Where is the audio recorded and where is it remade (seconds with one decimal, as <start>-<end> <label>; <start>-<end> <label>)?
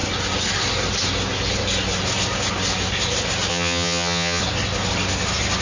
0.0-3.5 recorded; 3.5-4.4 remade; 4.4-5.6 recorded